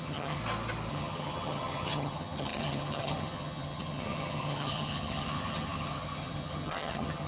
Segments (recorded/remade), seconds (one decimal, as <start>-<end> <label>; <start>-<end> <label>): 0.0-0.4 remade; 0.4-0.9 recorded; 0.9-7.3 remade